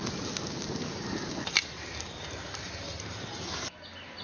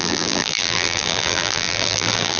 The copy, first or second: second